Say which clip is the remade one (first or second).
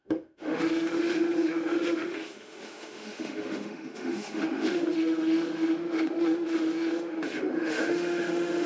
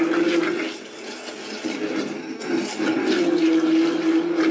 first